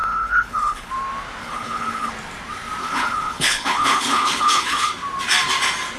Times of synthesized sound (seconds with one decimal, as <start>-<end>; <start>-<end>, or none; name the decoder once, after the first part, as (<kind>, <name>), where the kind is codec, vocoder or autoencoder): 0.0-0.9 (codec, HILCodec); 1.4-2.1; 2.8-4.9